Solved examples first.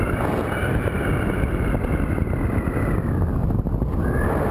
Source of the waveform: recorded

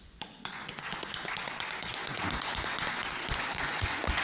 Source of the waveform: remade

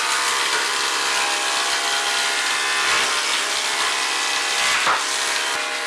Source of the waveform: recorded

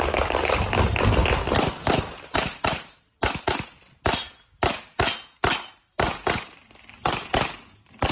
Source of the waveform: recorded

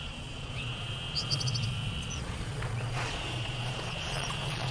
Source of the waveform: remade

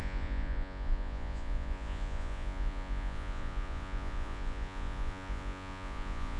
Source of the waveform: remade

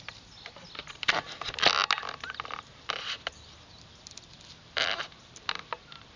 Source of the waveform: recorded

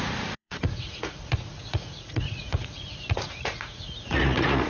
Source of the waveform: remade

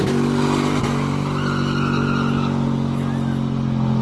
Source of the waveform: recorded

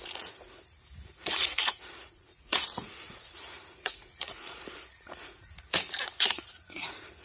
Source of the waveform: remade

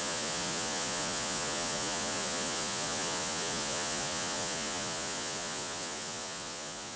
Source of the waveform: remade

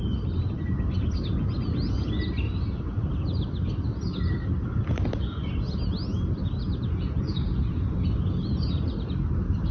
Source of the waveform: recorded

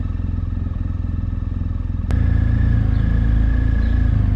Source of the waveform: recorded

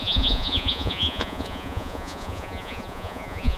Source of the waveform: remade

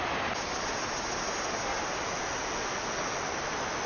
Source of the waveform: recorded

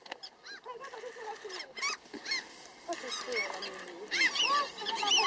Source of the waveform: recorded